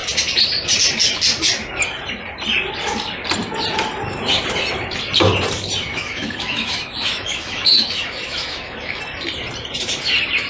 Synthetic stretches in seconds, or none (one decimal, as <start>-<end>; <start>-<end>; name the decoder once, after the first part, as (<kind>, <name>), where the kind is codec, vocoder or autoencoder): 5.9-9.0 (autoencoder, DAC-VAE)